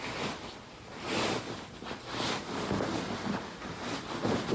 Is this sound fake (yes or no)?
no